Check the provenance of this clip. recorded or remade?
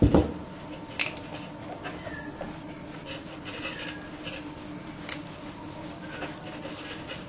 recorded